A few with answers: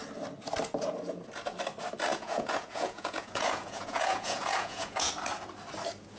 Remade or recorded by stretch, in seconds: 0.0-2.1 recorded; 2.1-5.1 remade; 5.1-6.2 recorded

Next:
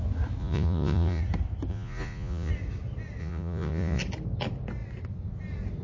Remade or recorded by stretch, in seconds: 0.0-0.4 recorded; 0.4-1.2 remade; 1.2-1.7 recorded; 1.7-2.5 remade; 2.5-3.2 recorded; 3.2-4.0 remade; 4.0-5.8 recorded

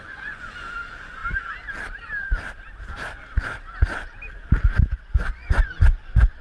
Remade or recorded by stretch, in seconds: 0.0-1.2 remade; 1.2-5.0 recorded; 5.0-6.4 remade

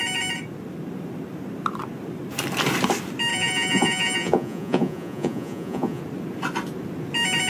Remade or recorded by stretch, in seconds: 0.0-3.3 recorded; 3.3-6.0 remade; 6.0-7.5 recorded

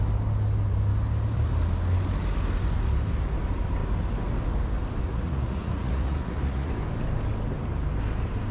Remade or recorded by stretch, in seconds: 0.0-5.0 recorded; 5.0-6.7 remade; 6.7-8.5 recorded

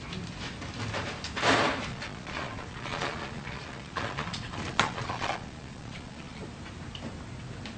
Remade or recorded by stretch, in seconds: 0.0-1.9 recorded; 1.9-6.4 remade; 6.4-7.8 recorded